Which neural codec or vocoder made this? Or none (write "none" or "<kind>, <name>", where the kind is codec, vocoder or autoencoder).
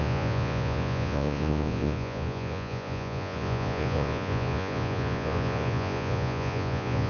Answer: vocoder, Vocos